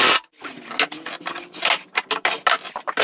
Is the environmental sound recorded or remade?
recorded